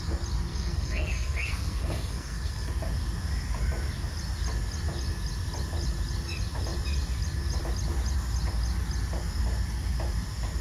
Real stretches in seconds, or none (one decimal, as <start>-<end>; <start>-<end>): 0.0-0.5; 2.7-10.6